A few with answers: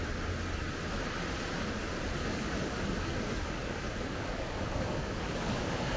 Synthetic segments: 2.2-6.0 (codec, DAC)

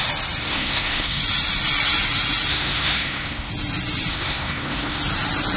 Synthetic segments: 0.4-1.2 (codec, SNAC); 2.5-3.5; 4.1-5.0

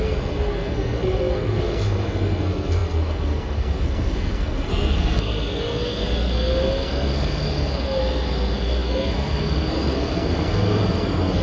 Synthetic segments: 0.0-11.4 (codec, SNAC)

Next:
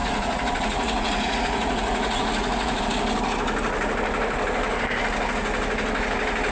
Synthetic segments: 0.0-2.8 (vocoder, Vocos)

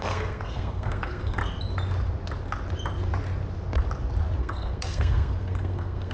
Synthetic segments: 0.0-1.4 (codec, SNAC); 4.4-6.1